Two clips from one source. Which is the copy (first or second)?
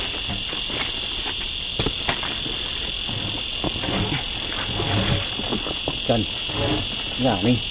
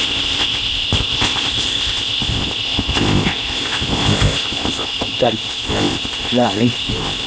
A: second